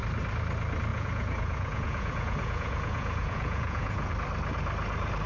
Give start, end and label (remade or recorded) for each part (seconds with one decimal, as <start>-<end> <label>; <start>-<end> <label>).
0.0-0.9 recorded; 0.9-4.1 remade; 4.1-5.3 recorded